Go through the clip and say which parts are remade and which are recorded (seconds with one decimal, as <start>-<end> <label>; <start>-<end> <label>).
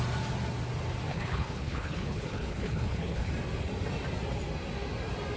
0.0-1.1 recorded; 1.1-3.3 remade; 3.3-5.4 recorded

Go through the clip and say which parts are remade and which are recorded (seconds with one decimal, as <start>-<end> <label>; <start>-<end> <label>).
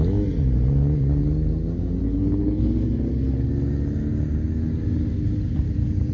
0.0-2.0 recorded; 2.0-3.5 remade; 3.5-6.1 recorded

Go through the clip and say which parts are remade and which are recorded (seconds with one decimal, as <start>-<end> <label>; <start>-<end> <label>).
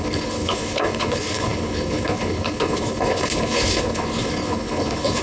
0.0-5.2 remade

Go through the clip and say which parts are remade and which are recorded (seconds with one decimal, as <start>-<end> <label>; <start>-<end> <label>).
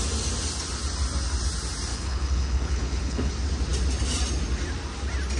0.0-1.9 recorded; 1.9-3.3 remade; 3.3-5.4 recorded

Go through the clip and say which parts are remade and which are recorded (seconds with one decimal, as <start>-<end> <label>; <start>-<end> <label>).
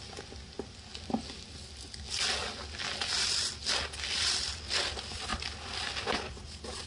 0.0-6.9 recorded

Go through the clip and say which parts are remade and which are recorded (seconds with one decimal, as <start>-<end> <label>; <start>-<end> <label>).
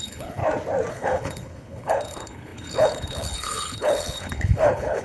0.0-0.4 remade; 0.4-0.9 recorded; 0.9-5.0 remade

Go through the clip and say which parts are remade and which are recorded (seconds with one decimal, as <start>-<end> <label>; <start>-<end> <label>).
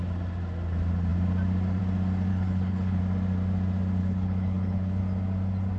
0.0-2.3 recorded; 2.3-3.0 remade; 3.0-4.0 recorded; 4.0-5.0 remade; 5.0-5.8 recorded